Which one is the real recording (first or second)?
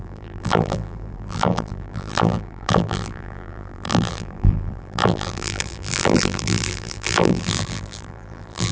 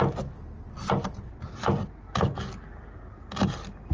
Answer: second